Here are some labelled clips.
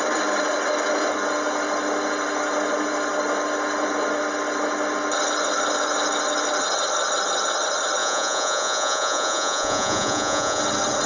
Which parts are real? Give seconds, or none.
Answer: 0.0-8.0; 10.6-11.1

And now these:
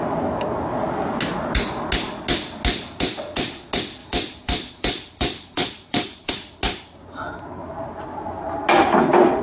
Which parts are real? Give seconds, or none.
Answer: 0.0-4.0; 6.3-9.4

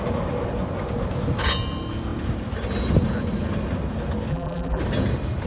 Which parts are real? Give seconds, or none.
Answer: 0.0-4.3; 4.8-5.5

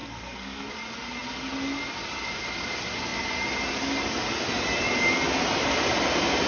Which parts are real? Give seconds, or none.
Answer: 0.7-6.5

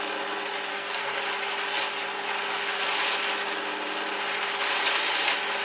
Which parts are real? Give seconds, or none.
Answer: 0.0-0.7; 1.2-5.6